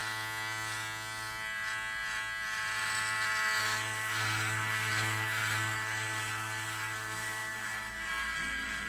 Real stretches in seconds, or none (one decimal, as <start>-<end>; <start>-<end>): 0.0-3.6